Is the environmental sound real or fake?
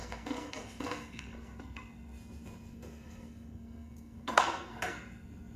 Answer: fake